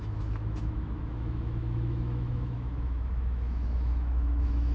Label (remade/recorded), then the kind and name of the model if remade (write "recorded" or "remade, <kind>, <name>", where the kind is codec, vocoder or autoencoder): remade, autoencoder, DAC-VAE